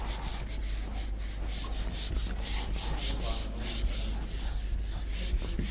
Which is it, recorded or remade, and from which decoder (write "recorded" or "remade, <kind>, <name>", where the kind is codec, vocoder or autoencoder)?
recorded